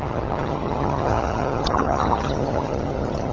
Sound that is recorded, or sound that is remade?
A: remade